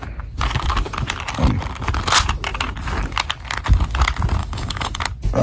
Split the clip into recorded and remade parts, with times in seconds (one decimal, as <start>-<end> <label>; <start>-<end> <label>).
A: 0.0-4.4 recorded; 4.4-5.0 remade; 5.0-5.4 recorded